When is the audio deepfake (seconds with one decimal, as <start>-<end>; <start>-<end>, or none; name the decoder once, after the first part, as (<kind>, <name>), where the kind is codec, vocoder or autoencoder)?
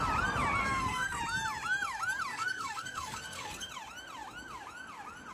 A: 0.6-1.2 (codec, SNAC); 2.3-3.7